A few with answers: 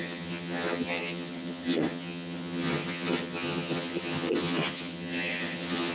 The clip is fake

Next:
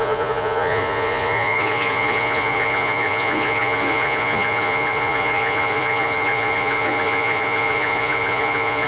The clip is fake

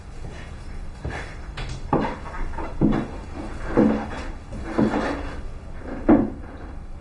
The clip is real